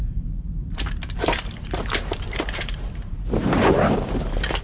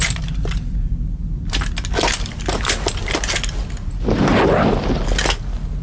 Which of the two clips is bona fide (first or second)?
second